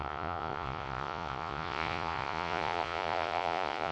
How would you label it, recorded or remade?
remade